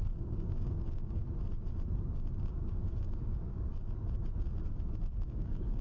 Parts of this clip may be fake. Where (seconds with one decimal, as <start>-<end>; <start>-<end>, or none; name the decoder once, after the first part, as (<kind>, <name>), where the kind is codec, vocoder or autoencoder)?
0.0-1.2 (codec, DAC); 2.5-3.7; 5.1-5.8